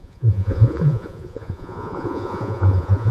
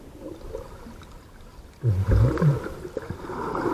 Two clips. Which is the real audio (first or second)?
second